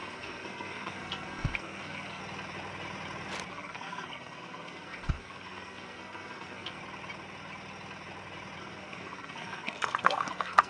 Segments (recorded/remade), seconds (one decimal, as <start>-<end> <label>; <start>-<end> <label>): 0.0-2.2 remade; 2.2-3.5 recorded; 3.5-6.8 remade; 6.8-8.6 recorded; 8.6-10.7 remade